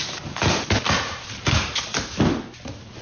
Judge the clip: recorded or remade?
recorded